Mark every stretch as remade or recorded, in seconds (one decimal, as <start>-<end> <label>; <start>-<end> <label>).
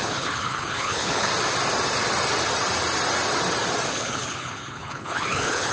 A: 0.0-1.3 remade; 1.3-3.9 recorded; 3.9-5.7 remade